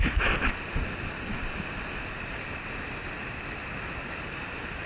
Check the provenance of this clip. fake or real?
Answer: real